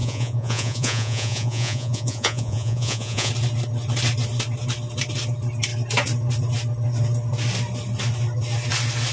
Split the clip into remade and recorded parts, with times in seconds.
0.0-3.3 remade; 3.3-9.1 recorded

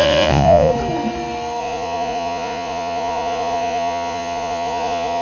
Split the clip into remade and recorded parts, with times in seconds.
0.0-0.7 remade; 0.7-1.6 recorded; 1.6-5.2 remade

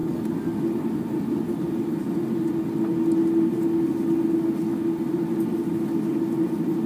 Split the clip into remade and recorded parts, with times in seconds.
0.0-6.9 recorded